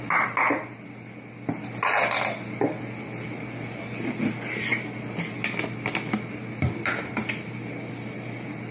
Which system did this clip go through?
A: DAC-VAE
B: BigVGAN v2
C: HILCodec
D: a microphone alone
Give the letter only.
D